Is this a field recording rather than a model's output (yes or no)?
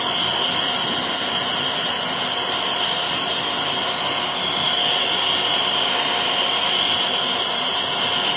yes